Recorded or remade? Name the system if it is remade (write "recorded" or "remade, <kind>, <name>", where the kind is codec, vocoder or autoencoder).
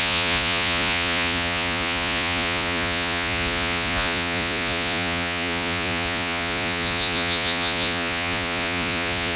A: remade, vocoder, Vocos